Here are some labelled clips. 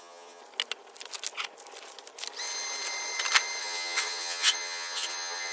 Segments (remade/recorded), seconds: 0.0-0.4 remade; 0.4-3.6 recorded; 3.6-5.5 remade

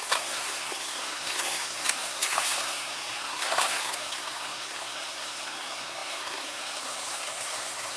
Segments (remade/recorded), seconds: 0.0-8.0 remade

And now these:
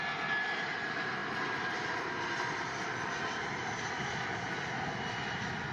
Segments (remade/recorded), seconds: 0.0-5.7 recorded

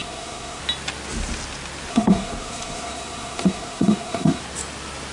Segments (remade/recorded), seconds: 0.0-0.6 remade; 0.6-1.9 recorded; 1.9-4.4 remade; 4.4-5.1 recorded